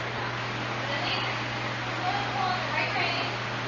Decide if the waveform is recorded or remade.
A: recorded